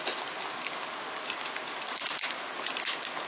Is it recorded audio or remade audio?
recorded